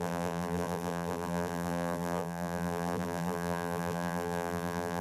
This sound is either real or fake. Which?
fake